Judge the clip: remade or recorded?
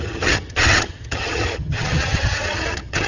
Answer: remade